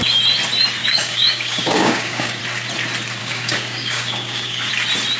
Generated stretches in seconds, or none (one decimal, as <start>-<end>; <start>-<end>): 0.8-2.4; 3.2-4.7